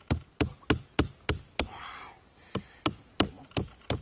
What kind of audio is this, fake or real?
real